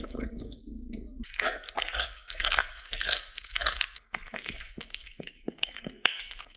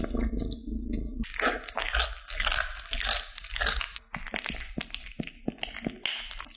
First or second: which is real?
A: second